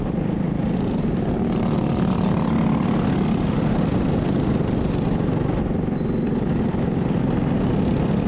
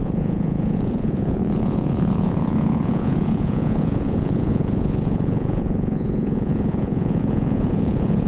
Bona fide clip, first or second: first